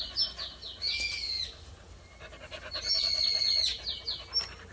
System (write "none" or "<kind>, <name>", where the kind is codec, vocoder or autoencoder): none